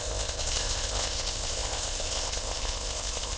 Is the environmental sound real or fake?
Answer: fake